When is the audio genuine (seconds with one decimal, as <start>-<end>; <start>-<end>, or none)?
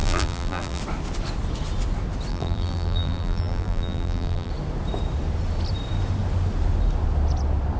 0.8-2.3; 4.5-7.8